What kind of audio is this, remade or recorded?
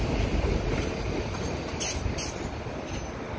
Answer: recorded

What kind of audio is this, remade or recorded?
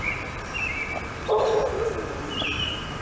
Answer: recorded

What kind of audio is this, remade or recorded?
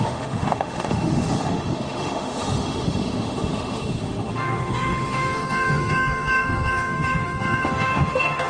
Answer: remade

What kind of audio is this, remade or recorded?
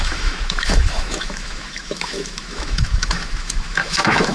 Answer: remade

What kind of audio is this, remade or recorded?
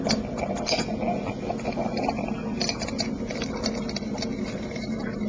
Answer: recorded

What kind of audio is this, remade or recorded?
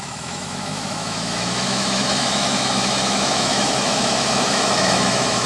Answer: remade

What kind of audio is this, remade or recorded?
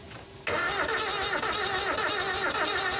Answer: recorded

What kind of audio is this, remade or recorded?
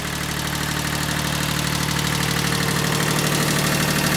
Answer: recorded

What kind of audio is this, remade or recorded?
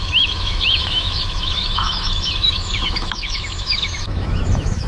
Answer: remade